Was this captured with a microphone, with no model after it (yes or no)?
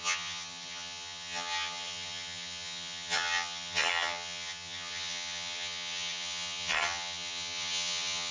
no